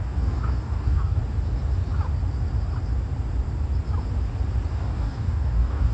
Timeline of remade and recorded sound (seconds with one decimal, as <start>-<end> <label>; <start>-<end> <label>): 0.0-1.2 remade; 1.2-4.7 recorded; 4.7-5.9 remade

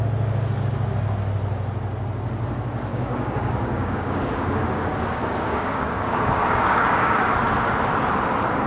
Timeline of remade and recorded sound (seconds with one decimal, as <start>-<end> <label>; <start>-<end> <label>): 0.0-2.9 recorded; 2.9-7.2 remade; 7.2-8.7 recorded

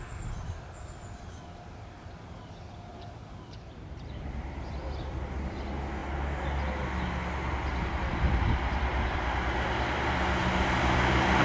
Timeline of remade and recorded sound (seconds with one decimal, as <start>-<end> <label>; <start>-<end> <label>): 0.0-2.9 recorded; 2.9-4.6 remade; 4.6-11.4 recorded

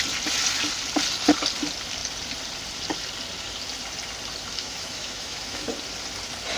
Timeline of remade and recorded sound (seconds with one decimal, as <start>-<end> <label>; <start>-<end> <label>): 0.0-4.5 recorded; 4.5-5.7 remade; 5.7-6.6 recorded

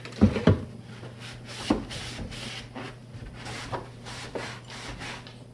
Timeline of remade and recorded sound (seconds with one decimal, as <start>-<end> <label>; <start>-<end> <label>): 0.0-3.0 recorded; 3.0-4.7 remade; 4.7-5.5 recorded

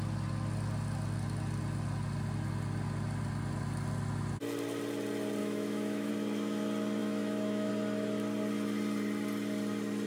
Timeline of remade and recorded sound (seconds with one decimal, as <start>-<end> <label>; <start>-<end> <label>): 0.0-5.4 recorded; 5.4-6.1 remade; 6.1-7.0 recorded; 7.0-7.7 remade; 7.7-10.1 recorded

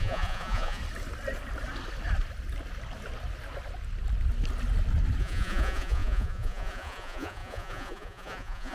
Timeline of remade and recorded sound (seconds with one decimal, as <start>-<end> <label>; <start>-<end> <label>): 0.0-0.8 remade; 0.8-5.2 recorded; 5.2-8.7 remade

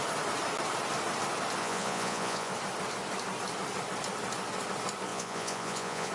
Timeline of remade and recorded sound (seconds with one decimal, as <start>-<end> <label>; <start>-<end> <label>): 0.0-1.6 recorded; 1.6-2.5 remade; 2.5-5.1 recorded; 5.1-6.1 remade